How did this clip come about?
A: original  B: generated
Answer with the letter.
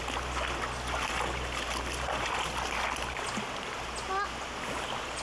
A